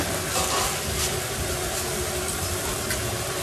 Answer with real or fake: real